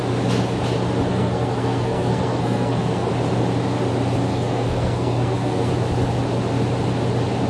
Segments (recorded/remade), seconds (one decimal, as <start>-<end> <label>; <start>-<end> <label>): 0.0-1.1 recorded; 1.1-3.1 remade; 3.1-4.3 recorded; 4.3-5.7 remade; 5.7-7.5 recorded